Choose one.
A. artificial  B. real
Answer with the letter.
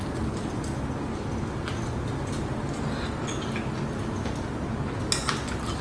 B